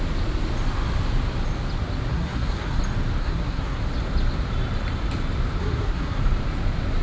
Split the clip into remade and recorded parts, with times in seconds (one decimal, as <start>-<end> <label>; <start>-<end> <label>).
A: 0.0-2.1 recorded; 2.1-2.8 remade; 2.8-3.2 recorded; 3.2-3.8 remade; 3.8-5.6 recorded; 5.6-6.2 remade; 6.2-7.0 recorded